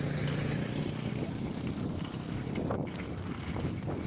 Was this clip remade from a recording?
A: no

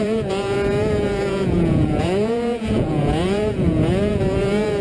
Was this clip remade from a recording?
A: yes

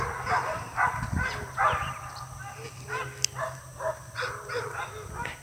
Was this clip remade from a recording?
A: no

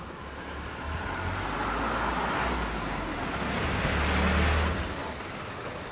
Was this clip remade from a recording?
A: no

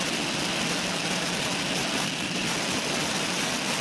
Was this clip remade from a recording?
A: no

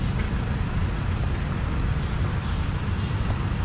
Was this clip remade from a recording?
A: no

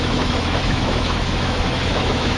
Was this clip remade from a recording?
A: yes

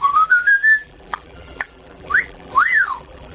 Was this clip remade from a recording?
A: yes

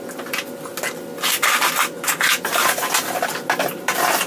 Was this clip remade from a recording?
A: no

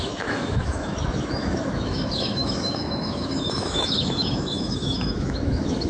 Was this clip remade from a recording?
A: yes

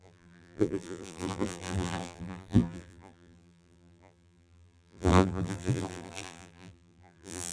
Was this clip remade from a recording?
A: yes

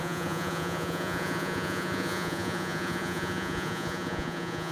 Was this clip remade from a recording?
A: yes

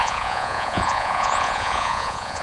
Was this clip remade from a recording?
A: yes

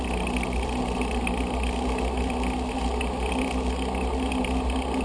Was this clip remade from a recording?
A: no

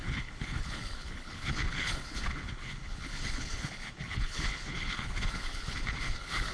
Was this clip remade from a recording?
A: yes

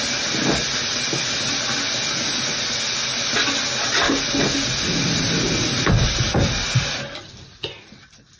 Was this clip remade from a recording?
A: no